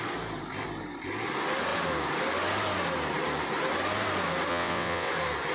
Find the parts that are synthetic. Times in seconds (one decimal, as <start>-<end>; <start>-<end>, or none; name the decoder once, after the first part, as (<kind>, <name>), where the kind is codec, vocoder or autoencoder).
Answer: 4.5-5.1 (vocoder, WaveNeXt)